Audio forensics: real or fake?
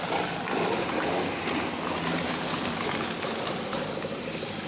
real